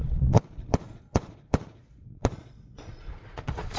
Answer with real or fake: fake